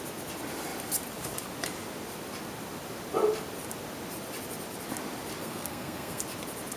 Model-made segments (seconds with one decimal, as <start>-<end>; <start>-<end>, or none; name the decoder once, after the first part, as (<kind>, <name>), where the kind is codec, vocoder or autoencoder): 5.4-6.2 (codec, SNAC)

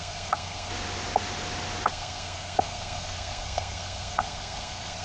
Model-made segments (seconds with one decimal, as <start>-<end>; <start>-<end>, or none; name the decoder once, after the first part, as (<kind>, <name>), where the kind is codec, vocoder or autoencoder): 0.0-0.7 (codec, SNAC); 1.9-5.0

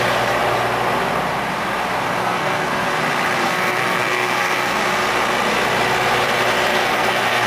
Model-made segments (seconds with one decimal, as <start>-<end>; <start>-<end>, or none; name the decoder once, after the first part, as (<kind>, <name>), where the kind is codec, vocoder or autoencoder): 2.2-3.0 (codec, SNAC); 3.4-4.8; 6.8-7.5

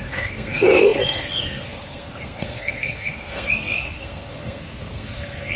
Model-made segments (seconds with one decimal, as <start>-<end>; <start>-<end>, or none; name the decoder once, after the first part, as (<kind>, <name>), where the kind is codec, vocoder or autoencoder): 0.0-5.6 (codec, SNAC)

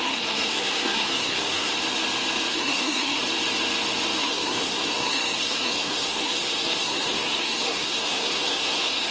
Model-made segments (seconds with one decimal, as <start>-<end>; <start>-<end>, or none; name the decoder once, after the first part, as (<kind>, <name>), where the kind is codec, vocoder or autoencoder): 0.0-1.7 (codec, SNAC); 2.5-3.2; 4.2-9.1

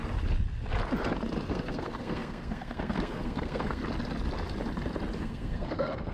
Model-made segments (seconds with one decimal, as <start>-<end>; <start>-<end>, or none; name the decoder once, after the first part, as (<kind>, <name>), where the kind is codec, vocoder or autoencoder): 1.5-3.8 (codec, SNAC); 5.2-6.1

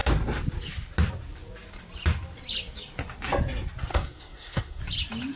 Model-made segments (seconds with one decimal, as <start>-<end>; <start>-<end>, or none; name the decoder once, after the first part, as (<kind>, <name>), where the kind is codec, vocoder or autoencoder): 3.9-4.8 (codec, SNAC)